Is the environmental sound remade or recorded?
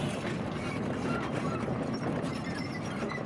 recorded